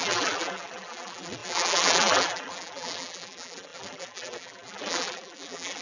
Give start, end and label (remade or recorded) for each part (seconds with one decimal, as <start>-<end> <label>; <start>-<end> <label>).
0.0-5.8 remade